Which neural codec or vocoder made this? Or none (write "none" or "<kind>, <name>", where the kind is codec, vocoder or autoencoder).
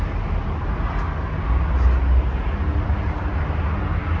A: none